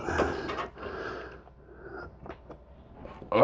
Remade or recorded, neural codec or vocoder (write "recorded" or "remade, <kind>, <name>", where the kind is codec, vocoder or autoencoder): recorded